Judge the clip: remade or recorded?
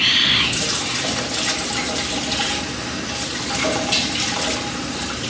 recorded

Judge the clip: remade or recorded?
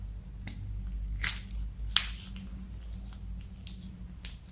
recorded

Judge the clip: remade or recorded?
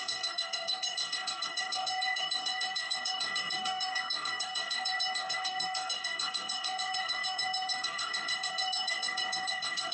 remade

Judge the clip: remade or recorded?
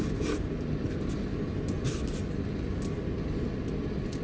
recorded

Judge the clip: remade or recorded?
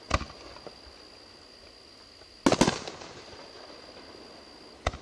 recorded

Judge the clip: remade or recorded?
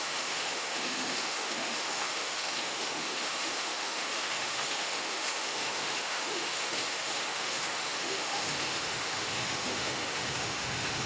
remade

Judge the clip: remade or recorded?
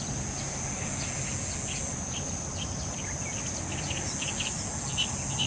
recorded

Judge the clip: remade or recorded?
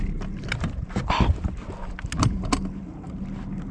recorded